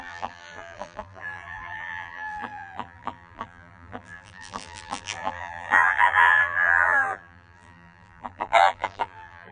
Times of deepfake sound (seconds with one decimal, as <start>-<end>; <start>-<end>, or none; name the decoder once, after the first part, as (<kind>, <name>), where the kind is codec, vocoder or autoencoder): 0.0-9.5 (vocoder, BigVGAN v2)